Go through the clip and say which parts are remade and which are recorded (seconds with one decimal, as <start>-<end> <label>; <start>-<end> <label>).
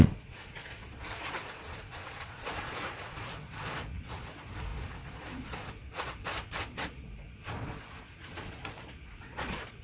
0.0-9.8 remade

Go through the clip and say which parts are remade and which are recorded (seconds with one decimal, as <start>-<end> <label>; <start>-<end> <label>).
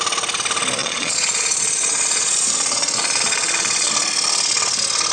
0.0-0.8 recorded; 0.8-3.9 remade; 3.9-5.1 recorded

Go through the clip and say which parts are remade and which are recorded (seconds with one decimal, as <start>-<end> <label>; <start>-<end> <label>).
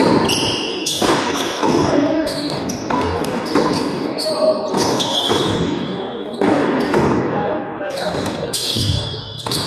0.0-0.7 recorded; 0.7-4.3 remade; 4.3-4.7 recorded; 4.7-9.7 remade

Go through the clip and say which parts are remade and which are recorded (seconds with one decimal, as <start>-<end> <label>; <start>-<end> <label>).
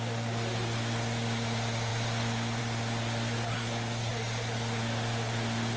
0.0-3.5 recorded; 3.5-4.1 remade; 4.1-5.8 recorded